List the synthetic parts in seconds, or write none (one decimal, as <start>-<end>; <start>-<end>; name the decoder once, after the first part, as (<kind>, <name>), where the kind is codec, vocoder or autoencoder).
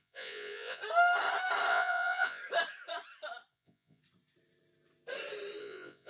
0.0-0.8 (vocoder, Vocos); 1.7-2.4; 3.5-4.0; 5.6-6.1